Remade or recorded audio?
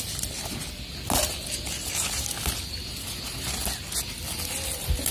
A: recorded